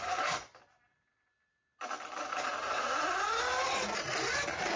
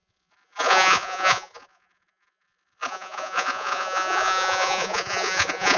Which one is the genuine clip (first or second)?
first